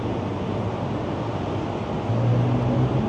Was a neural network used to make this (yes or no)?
no